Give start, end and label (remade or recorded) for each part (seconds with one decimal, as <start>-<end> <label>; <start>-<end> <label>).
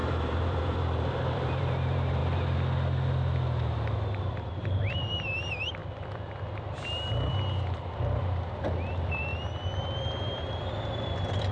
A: 0.0-2.2 remade; 2.2-4.3 recorded; 4.3-5.8 remade; 5.8-8.9 recorded; 8.9-11.5 remade